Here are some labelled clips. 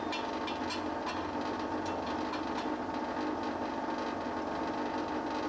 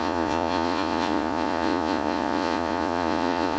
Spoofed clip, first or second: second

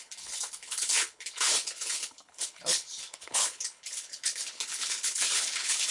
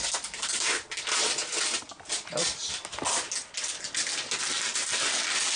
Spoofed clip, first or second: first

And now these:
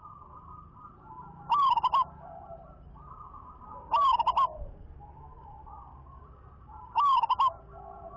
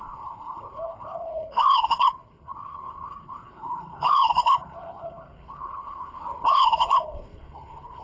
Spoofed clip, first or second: second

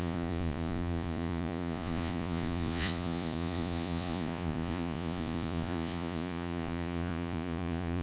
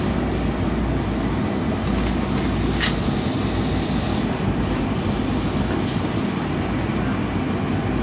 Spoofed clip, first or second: first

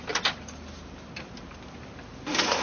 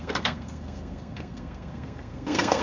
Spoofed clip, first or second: second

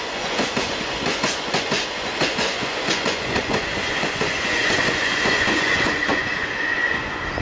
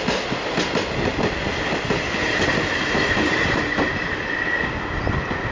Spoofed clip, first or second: first